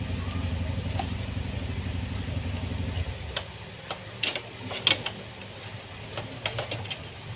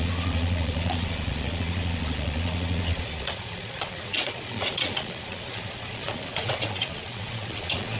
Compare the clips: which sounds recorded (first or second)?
first